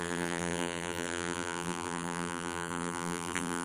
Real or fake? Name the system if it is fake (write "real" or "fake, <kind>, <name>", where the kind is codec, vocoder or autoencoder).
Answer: fake, vocoder, BigVGAN v2